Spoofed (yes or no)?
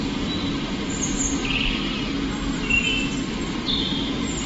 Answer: no